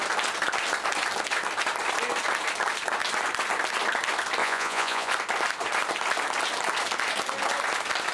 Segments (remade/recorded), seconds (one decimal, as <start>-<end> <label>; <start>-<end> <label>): 0.0-4.4 recorded; 4.4-5.1 remade; 5.1-8.1 recorded